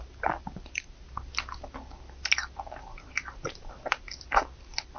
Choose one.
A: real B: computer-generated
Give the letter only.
A